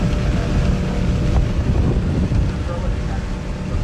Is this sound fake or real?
real